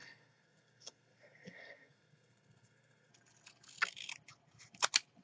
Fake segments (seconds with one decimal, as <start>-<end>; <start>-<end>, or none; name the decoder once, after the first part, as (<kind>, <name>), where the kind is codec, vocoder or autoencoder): 0.0-3.1 (codec, SNAC)